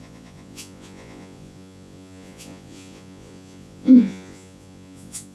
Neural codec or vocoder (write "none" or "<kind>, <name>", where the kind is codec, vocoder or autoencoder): vocoder, Vocos